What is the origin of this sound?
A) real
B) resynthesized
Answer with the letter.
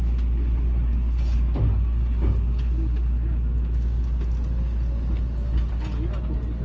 A